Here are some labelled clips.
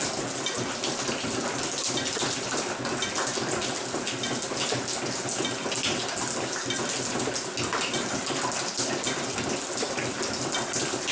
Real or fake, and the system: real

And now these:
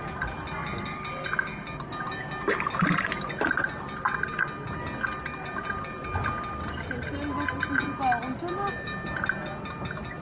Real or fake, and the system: real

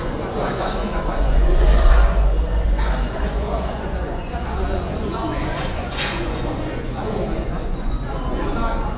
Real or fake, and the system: fake, vocoder, Vocos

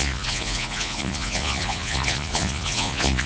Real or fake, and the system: fake, vocoder, Vocos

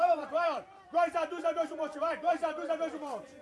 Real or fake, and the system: fake, vocoder, BigVGAN v2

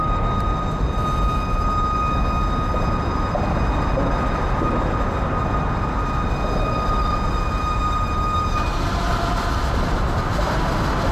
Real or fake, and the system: real